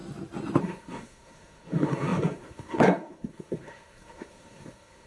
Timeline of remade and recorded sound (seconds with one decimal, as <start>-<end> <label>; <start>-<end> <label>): 0.0-0.6 recorded; 0.6-5.1 remade